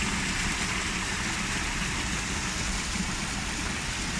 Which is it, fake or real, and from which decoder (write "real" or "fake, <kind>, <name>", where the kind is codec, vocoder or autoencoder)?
real